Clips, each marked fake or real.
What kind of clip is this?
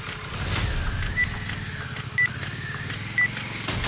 real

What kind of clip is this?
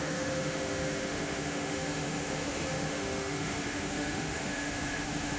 fake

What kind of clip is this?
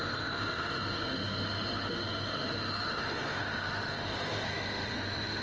fake